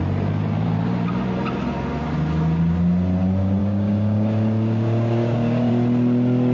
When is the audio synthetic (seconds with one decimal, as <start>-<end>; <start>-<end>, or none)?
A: 3.6-5.7